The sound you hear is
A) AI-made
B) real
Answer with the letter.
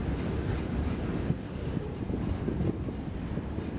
B